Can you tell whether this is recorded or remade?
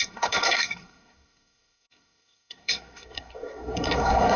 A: remade